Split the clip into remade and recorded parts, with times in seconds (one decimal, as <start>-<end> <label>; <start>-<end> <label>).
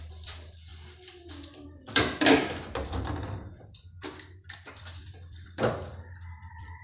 0.0-0.7 remade; 0.7-1.3 recorded; 1.3-6.8 remade